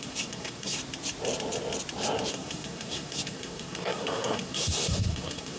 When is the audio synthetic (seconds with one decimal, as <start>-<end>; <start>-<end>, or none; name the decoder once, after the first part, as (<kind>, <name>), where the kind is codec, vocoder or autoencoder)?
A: 0.0-0.8 (codec, SNAC); 2.3-5.6